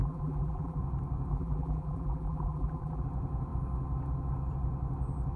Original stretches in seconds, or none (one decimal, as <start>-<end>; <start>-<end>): 0.8-1.3; 3.0-5.4